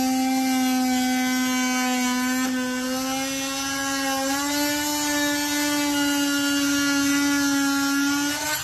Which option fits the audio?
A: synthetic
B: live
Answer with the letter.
B